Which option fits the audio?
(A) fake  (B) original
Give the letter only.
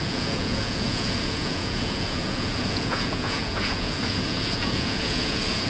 A